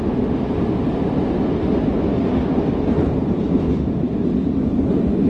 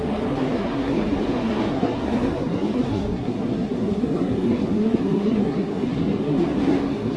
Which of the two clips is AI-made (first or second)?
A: second